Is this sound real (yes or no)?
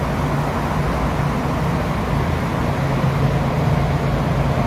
yes